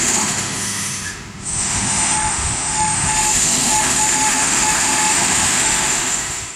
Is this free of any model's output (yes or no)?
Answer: no